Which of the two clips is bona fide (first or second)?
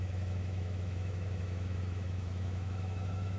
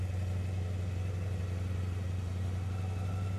second